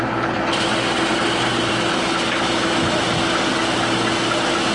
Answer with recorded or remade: recorded